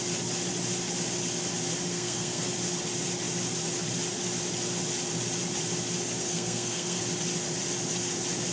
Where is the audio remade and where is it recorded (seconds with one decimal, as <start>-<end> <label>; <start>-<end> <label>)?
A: 0.0-1.9 recorded; 1.9-2.5 remade; 2.5-6.2 recorded; 6.2-7.0 remade; 7.0-8.5 recorded